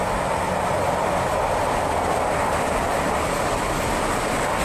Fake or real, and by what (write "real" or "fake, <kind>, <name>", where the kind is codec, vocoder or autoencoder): real